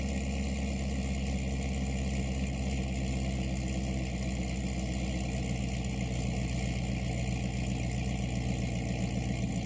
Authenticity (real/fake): real